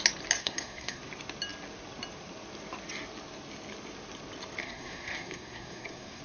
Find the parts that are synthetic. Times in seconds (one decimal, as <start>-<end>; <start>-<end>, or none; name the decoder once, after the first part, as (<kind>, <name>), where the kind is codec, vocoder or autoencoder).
0.4-1.0 (codec, SNAC); 4.6-6.2